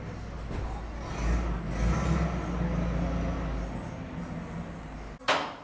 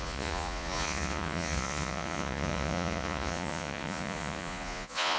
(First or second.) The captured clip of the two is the first